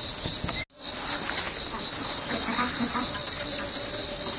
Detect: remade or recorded recorded